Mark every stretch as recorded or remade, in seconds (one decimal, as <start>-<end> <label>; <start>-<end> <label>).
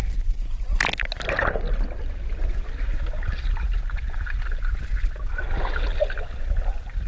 0.0-7.1 recorded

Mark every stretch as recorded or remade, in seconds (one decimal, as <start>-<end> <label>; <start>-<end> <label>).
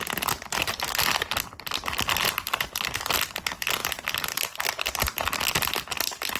0.0-6.4 recorded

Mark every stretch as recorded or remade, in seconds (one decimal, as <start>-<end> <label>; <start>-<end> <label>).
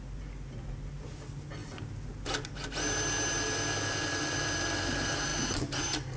0.0-6.2 recorded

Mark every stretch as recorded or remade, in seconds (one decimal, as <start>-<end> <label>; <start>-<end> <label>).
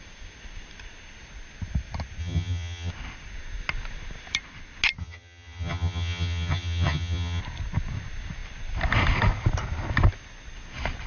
0.0-2.2 recorded; 2.2-2.9 remade; 2.9-5.0 recorded; 5.0-7.4 remade; 7.4-11.1 recorded